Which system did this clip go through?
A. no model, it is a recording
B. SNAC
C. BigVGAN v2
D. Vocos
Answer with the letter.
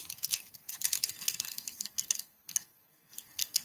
B